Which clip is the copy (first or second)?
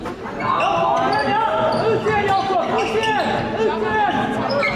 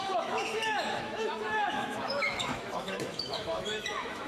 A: second